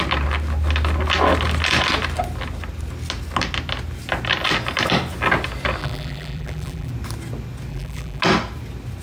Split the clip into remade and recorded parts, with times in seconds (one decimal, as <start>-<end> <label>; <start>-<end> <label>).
0.0-5.8 recorded; 5.8-6.9 remade; 6.9-7.7 recorded; 7.7-8.2 remade; 8.2-9.0 recorded